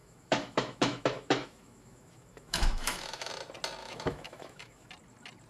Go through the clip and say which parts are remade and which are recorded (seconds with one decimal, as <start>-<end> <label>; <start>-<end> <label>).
0.0-3.3 remade; 3.3-3.8 recorded; 3.8-4.9 remade; 4.9-5.5 recorded